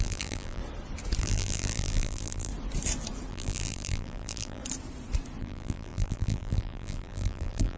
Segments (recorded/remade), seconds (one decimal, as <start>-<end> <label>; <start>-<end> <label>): 0.0-0.6 remade; 0.6-1.2 recorded; 1.2-2.5 remade; 2.5-3.3 recorded; 3.3-4.6 remade; 4.6-5.4 recorded; 5.4-7.8 remade